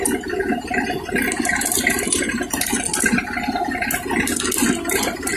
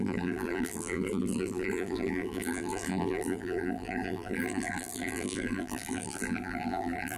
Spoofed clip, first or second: second